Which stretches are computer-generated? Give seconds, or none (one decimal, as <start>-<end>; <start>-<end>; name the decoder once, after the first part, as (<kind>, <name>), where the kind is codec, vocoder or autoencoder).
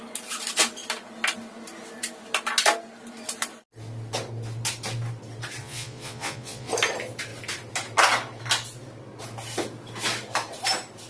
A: 5.6-6.7 (vocoder, Vocos)